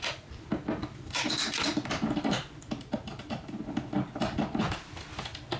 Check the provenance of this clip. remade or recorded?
recorded